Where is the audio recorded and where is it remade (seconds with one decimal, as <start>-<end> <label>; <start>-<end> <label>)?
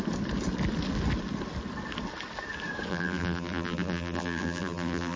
0.0-2.9 recorded; 2.9-5.2 remade